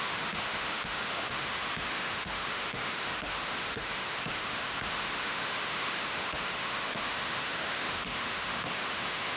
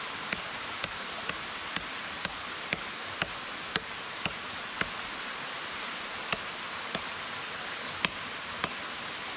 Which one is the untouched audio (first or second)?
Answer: second